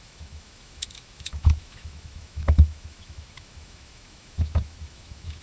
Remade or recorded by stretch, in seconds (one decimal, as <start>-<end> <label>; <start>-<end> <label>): 0.0-5.4 remade